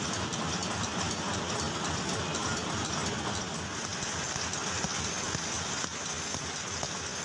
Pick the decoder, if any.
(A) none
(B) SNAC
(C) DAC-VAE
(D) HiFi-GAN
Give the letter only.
A